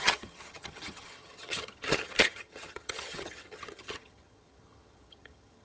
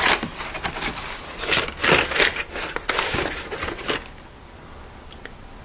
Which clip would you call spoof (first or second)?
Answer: first